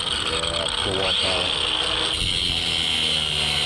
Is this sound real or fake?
real